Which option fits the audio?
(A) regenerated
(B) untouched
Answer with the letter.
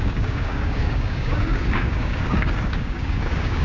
A